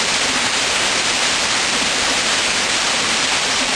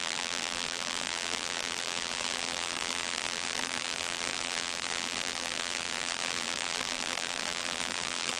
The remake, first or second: second